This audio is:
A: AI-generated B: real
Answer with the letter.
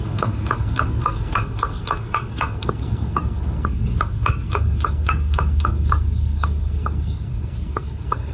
A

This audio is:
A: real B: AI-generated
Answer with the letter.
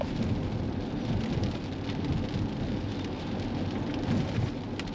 A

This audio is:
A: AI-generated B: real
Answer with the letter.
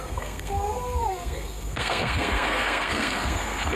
A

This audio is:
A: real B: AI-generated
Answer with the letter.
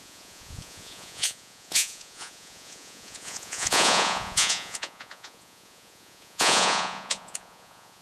B